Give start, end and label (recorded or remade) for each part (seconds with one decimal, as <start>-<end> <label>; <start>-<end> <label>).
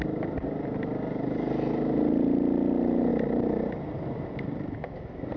0.0-5.4 recorded